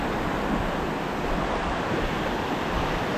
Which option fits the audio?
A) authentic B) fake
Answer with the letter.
A